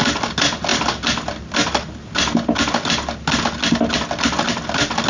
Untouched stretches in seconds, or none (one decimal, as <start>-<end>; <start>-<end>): 0.0-5.1